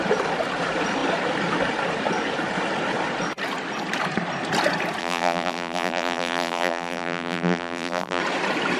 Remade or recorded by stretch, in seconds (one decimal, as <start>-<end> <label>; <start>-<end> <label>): 0.0-5.0 recorded; 5.0-8.2 remade; 8.2-8.8 recorded